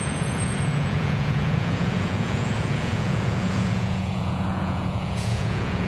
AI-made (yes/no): yes